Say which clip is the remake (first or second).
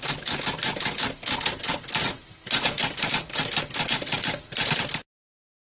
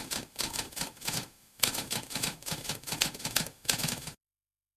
second